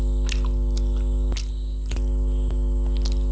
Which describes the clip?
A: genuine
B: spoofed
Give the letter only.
A